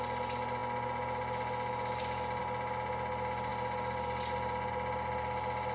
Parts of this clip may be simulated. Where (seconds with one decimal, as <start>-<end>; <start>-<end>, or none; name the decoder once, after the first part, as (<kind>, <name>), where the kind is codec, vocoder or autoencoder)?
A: none